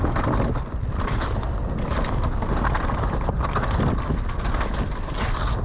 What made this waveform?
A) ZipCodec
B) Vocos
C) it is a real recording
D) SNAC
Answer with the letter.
C